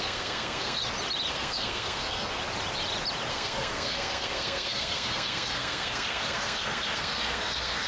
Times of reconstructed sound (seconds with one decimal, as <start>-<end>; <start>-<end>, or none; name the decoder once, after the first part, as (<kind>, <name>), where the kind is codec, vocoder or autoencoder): 0.0-0.8 (codec, SNAC); 1.3-2.4; 3.3-7.9